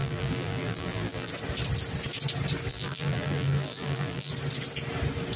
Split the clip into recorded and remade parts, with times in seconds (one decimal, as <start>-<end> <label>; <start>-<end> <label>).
0.0-1.3 remade; 1.3-2.7 recorded; 2.7-4.3 remade; 4.3-5.4 recorded